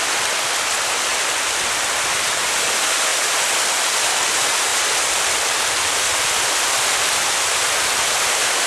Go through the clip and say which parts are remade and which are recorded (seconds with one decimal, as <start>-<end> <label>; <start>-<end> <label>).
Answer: 0.0-1.1 recorded; 1.1-2.5 remade; 2.5-4.7 recorded; 4.7-6.7 remade; 6.7-8.7 recorded